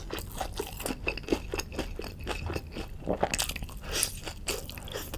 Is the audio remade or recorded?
recorded